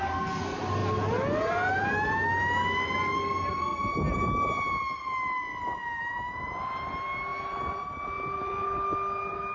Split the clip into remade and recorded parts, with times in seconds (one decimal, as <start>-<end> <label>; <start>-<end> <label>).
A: 0.0-9.5 recorded